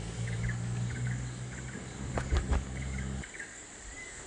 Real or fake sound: fake